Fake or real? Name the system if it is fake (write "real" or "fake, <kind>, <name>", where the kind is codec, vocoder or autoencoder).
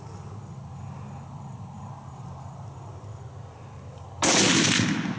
real